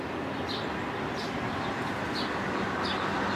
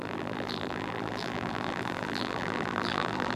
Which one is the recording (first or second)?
first